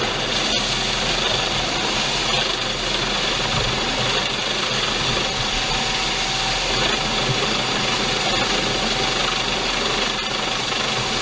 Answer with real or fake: real